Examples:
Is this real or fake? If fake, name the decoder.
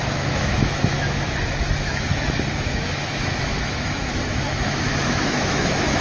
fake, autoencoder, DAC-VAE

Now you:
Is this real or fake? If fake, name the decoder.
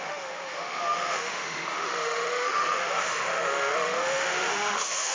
fake, autoencoder, DAC-VAE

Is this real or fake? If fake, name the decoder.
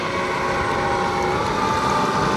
real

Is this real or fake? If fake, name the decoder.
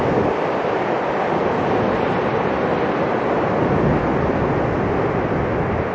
real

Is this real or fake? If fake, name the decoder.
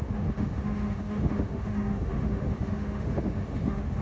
fake, autoencoder, DAC-VAE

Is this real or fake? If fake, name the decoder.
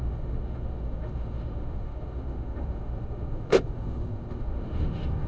fake, autoencoder, DAC-VAE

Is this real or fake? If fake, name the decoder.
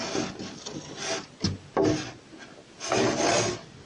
real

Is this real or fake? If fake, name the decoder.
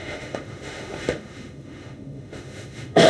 fake, autoencoder, DAC-VAE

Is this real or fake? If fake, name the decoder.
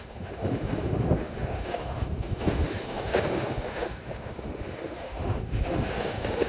fake, autoencoder, DAC-VAE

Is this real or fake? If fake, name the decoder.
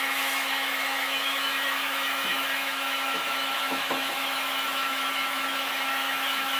fake, autoencoder, DAC-VAE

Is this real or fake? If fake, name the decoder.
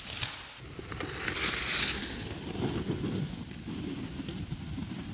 real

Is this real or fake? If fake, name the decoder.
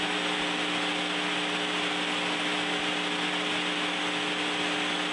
real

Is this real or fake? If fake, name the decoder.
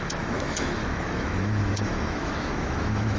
fake, autoencoder, DAC-VAE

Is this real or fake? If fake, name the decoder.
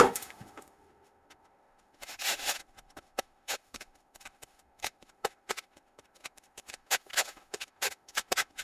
fake, autoencoder, DAC-VAE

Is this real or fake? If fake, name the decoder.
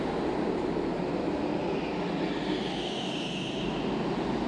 real